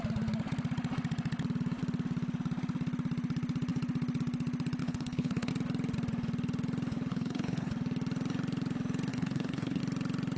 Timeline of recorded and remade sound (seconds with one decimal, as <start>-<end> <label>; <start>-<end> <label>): 0.0-4.8 recorded; 4.8-5.5 remade; 5.5-7.1 recorded; 7.1-7.7 remade; 7.7-9.1 recorded; 9.1-9.8 remade; 9.8-10.4 recorded